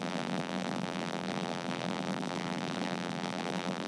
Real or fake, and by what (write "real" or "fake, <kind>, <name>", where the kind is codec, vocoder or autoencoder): fake, vocoder, BigVGAN v2